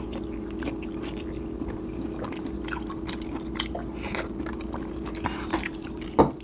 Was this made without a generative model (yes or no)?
yes